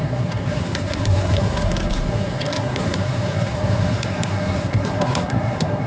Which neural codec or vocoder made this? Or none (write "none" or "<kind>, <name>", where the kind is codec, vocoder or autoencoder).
codec, SNAC